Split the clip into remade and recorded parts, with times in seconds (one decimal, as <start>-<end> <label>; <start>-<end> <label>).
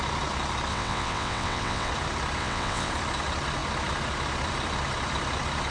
0.0-0.7 recorded; 0.7-1.9 remade; 1.9-2.4 recorded; 2.4-2.9 remade; 2.9-5.7 recorded